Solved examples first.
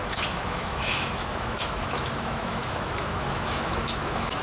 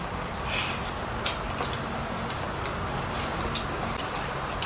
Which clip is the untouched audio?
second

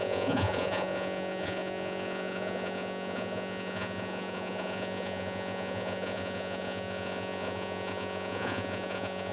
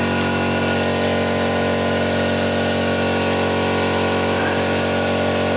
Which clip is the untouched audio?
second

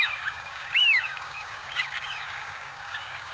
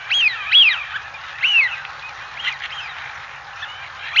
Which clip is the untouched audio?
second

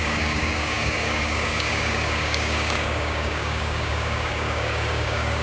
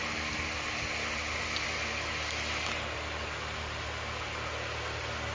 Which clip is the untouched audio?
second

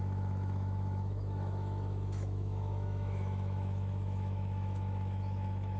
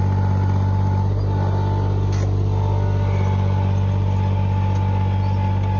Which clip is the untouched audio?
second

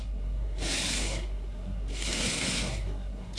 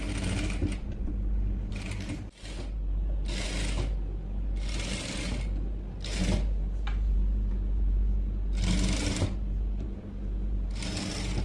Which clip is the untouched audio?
second